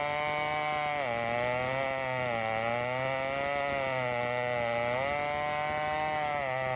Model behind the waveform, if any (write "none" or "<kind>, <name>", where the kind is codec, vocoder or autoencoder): none